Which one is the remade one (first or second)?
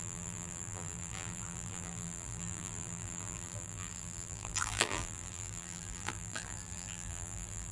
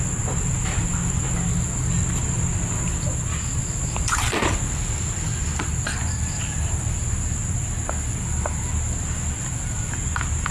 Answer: first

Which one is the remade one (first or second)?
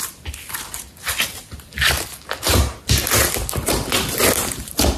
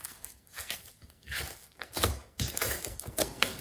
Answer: second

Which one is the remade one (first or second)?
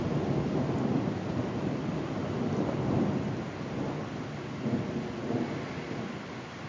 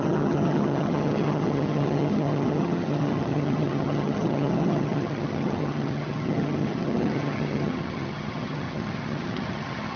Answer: second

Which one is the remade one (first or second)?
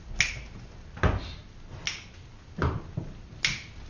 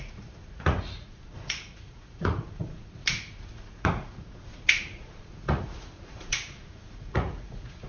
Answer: second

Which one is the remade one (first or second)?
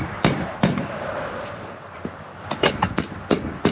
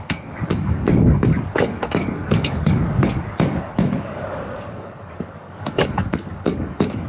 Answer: second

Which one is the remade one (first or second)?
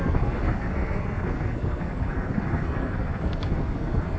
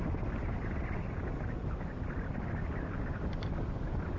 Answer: first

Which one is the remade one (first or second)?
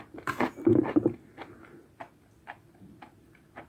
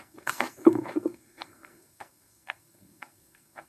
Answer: second